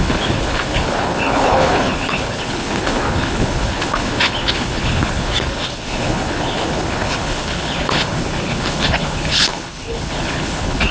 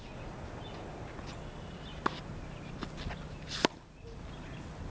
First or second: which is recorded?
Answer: second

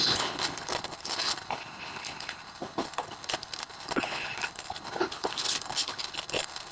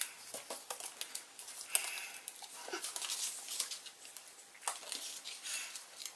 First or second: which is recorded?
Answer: second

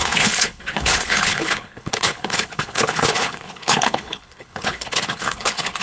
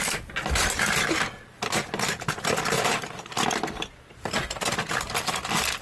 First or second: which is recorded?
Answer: second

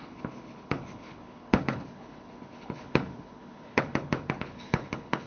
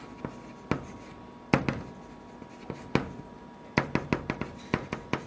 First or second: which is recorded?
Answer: second